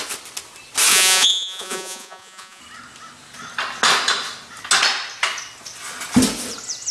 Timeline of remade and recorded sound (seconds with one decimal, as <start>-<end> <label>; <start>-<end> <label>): 0.0-0.9 recorded; 0.9-2.6 remade; 2.6-6.9 recorded